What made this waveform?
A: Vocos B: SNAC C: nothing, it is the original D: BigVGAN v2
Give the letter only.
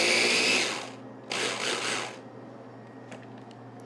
C